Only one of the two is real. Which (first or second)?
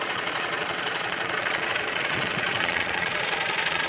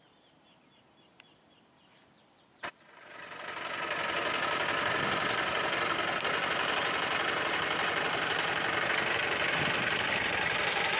second